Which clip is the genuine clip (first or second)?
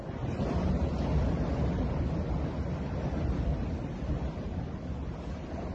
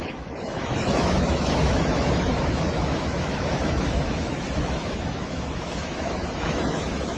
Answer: first